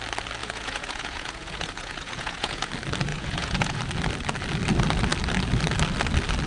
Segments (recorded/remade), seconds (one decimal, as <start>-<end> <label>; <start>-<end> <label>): 0.0-0.4 recorded; 0.4-2.7 remade; 2.7-3.1 recorded; 3.1-3.8 remade; 3.8-6.5 recorded